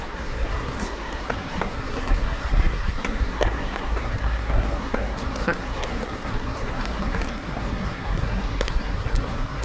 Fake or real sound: fake